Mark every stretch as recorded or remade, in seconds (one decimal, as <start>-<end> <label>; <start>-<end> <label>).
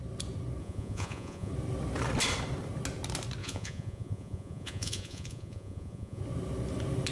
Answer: 0.0-0.6 recorded; 0.6-1.5 remade; 1.5-3.4 recorded; 3.4-6.2 remade; 6.2-7.1 recorded